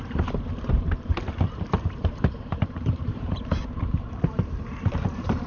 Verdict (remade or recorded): remade